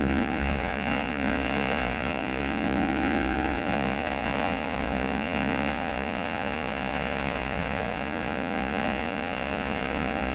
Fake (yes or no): yes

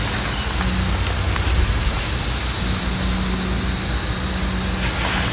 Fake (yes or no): no